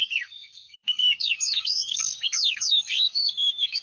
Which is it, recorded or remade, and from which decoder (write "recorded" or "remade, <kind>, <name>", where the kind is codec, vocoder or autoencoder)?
remade, codec, SNAC